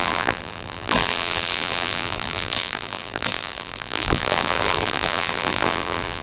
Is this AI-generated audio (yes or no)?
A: yes